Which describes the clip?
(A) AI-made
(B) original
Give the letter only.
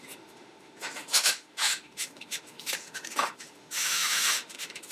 A